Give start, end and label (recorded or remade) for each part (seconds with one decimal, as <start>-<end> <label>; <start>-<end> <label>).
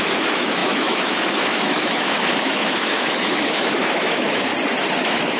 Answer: 0.0-4.5 remade; 4.5-5.0 recorded; 5.0-5.4 remade